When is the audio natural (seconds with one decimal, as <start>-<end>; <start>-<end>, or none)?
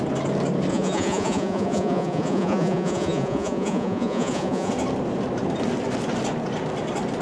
0.0-0.7; 4.7-7.2